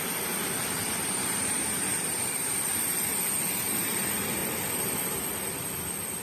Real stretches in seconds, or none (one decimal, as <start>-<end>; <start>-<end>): 0.0-0.6; 2.7-4.4; 5.0-6.2